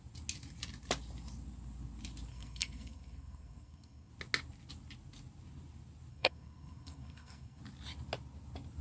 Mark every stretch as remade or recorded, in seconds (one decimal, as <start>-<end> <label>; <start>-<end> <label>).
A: 0.0-2.3 recorded; 2.3-4.1 remade; 4.1-6.1 recorded; 6.1-7.6 remade; 7.6-8.8 recorded